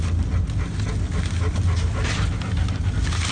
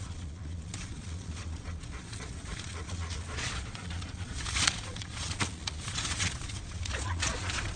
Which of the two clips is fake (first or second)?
second